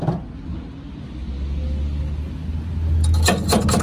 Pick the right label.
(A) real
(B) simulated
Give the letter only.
A